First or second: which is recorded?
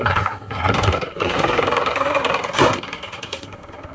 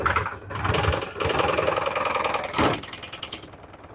second